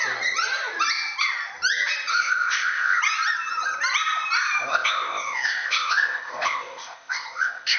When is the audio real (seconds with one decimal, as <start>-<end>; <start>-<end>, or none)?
0.0-2.1; 3.0-4.7